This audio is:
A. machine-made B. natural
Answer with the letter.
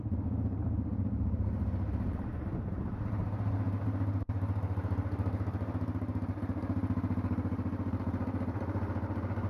A